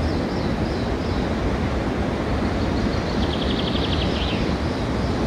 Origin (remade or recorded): recorded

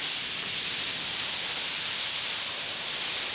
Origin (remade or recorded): recorded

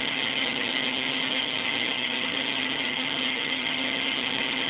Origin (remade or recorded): remade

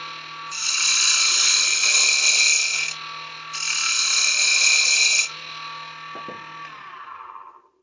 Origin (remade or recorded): recorded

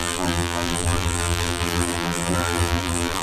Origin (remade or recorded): remade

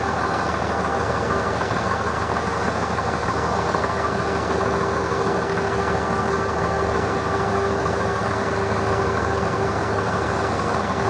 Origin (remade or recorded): remade